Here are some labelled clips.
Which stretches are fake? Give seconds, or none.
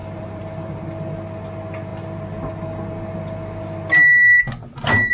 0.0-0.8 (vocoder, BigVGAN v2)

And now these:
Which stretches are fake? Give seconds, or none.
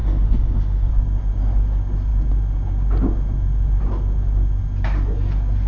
0.0-0.9 (autoencoder, DAC-VAE)